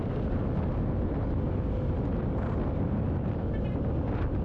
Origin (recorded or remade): recorded